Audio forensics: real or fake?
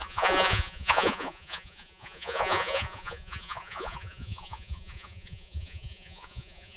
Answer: fake